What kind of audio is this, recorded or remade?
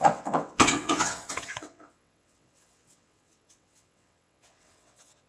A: remade